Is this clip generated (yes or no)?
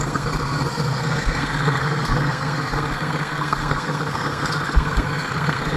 yes